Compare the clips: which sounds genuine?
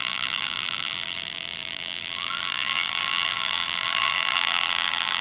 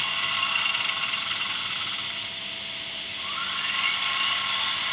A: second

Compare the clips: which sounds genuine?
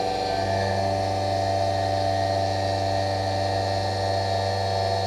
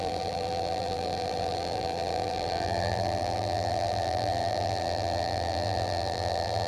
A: first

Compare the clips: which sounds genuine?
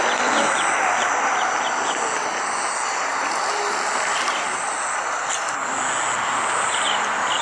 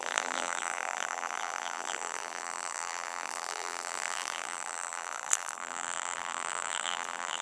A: first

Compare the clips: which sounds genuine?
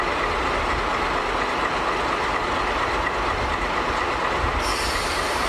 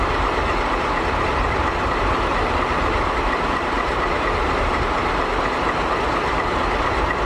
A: first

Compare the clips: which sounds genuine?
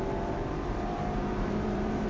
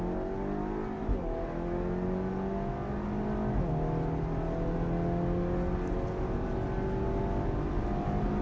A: second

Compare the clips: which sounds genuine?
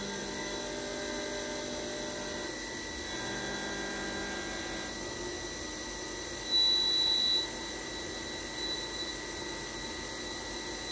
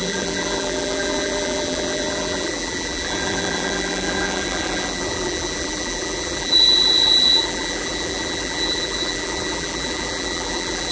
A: first